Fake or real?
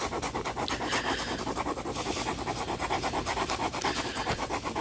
real